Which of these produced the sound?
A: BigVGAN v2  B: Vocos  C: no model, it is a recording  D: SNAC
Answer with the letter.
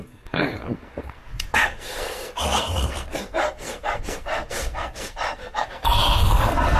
D